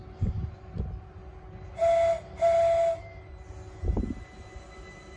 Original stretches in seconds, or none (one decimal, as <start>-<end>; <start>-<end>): 0.0-5.2